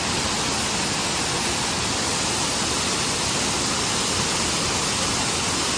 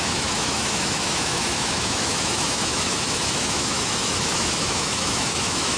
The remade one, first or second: second